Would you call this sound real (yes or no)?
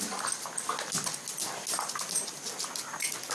yes